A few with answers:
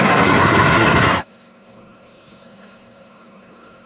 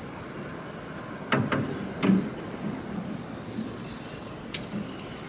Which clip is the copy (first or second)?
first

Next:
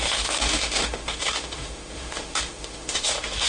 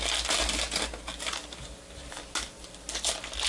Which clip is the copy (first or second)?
first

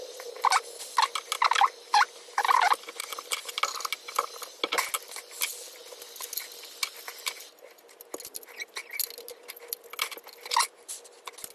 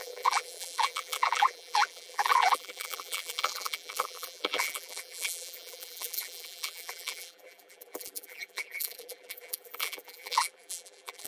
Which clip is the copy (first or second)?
second